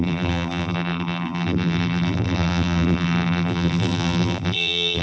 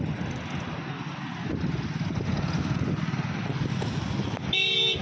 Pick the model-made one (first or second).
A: first